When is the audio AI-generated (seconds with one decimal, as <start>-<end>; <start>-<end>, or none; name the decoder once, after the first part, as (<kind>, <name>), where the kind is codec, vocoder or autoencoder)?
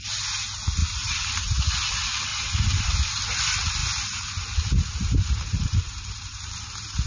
0.8-1.7 (vocoder, BigVGAN v2); 2.3-3.1; 3.8-7.1